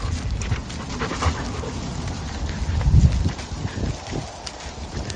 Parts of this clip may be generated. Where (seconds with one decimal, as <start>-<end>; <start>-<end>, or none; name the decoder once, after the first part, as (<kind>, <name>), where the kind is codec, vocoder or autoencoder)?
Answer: none